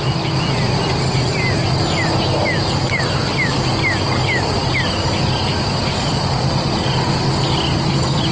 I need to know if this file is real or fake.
real